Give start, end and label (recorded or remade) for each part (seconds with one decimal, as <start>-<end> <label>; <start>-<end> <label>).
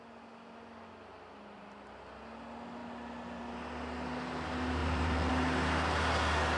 0.0-4.8 recorded; 4.8-5.3 remade; 5.3-6.6 recorded